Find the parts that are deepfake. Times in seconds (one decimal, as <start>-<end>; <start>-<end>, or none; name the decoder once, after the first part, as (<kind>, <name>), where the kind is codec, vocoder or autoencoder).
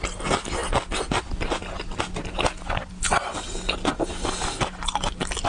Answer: none